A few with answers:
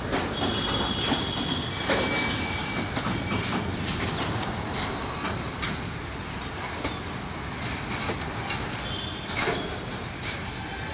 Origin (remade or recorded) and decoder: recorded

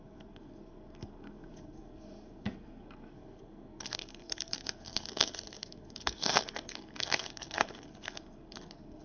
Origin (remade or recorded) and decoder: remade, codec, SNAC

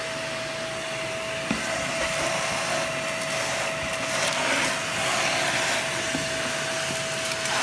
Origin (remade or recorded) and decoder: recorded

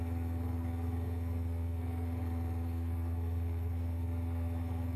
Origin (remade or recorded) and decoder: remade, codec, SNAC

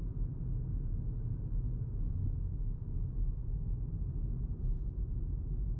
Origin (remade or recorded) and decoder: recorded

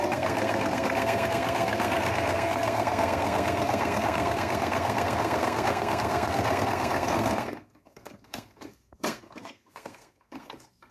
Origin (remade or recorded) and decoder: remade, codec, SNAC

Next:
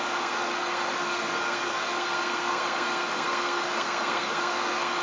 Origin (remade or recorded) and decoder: remade, codec, SNAC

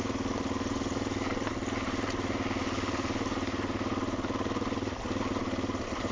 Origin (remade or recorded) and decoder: recorded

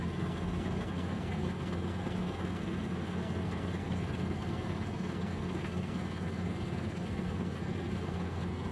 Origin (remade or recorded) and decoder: remade, codec, SNAC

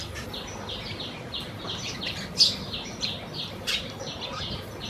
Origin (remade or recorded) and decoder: recorded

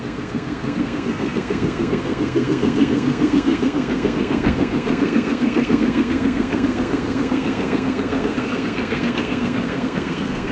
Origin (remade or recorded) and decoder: remade, codec, SNAC